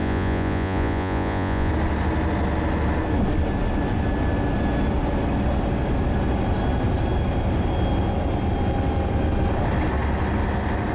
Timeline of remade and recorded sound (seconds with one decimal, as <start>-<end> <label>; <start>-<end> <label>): 0.0-1.7 remade; 1.7-10.9 recorded